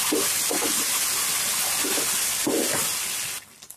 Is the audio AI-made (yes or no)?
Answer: no